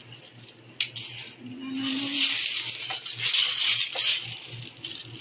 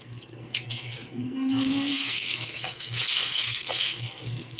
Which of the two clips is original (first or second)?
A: first